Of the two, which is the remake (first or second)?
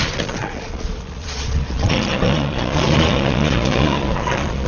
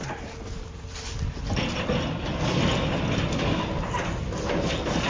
first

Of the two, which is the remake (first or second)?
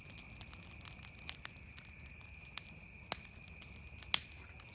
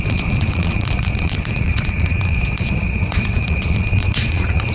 second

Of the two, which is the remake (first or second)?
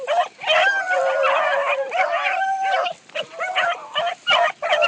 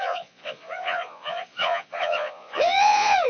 second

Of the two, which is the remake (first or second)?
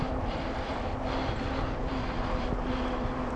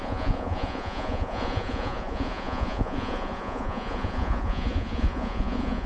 second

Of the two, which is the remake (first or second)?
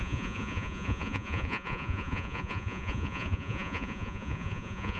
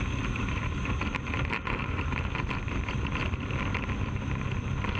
first